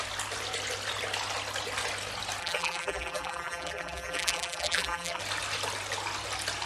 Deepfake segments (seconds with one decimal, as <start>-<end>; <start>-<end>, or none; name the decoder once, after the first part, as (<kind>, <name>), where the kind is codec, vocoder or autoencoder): 2.4-5.2 (vocoder, BigVGAN v2)

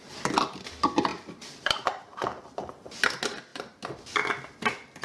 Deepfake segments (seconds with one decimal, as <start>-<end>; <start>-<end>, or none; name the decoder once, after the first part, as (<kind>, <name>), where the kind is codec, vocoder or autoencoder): 1.1-2.4 (vocoder, BigVGAN v2)

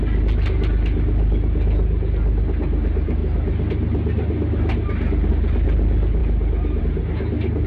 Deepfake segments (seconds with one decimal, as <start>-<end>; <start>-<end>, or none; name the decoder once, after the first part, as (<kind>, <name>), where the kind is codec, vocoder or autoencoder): none

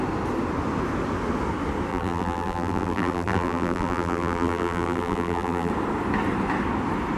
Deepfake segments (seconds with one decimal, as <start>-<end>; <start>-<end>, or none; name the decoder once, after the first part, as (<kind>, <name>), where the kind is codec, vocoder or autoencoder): 1.9-5.7 (vocoder, BigVGAN v2)

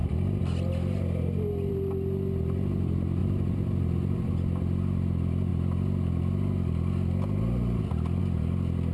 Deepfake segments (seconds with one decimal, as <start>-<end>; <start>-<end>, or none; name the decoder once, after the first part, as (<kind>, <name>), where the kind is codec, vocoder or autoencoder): 3.2-4.3 (vocoder, BigVGAN v2)

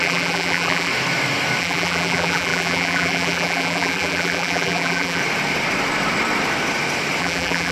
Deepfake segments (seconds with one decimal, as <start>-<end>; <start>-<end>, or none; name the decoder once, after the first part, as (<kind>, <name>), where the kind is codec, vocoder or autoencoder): 0.0-0.9 (vocoder, BigVGAN v2); 1.6-5.2; 7.2-7.7

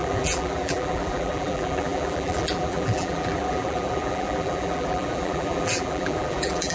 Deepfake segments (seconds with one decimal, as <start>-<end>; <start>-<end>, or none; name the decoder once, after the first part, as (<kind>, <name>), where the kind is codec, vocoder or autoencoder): 0.0-6.7 (vocoder, BigVGAN v2)